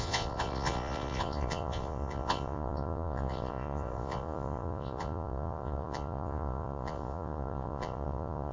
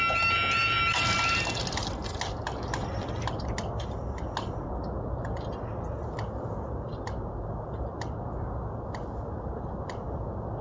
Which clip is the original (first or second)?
second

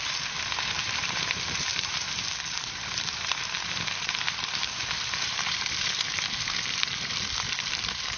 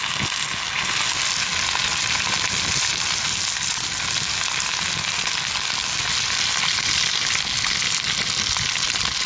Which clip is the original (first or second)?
second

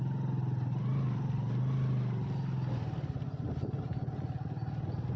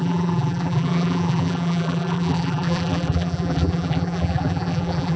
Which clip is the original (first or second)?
first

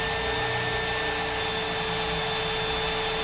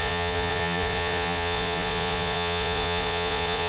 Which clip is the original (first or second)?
first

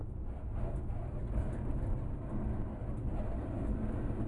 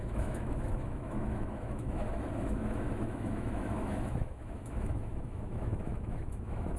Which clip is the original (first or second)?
first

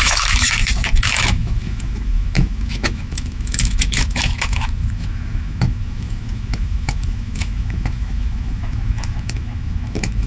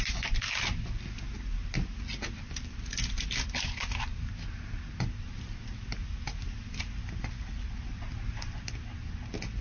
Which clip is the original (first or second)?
second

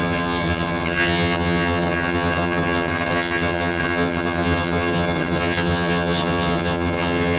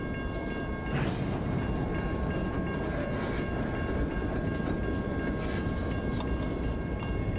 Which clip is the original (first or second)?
second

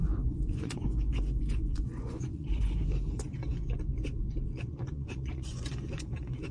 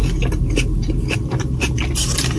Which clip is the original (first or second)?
second